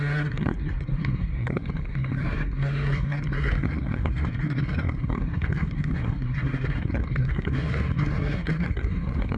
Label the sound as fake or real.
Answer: fake